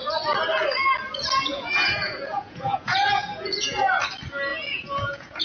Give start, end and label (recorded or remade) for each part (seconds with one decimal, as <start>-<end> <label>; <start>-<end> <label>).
0.0-1.5 recorded; 1.5-3.8 remade; 3.8-4.5 recorded; 4.5-5.4 remade